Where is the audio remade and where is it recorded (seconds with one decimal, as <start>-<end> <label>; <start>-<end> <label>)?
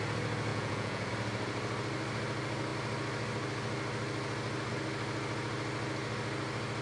0.0-0.5 recorded; 0.5-1.1 remade; 1.1-6.8 recorded